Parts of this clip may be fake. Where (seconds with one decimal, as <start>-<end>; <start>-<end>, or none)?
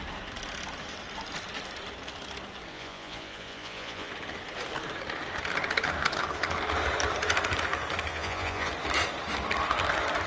2.7-4.1; 8.1-8.7